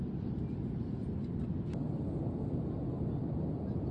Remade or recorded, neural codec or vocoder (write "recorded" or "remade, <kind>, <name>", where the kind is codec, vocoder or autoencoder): recorded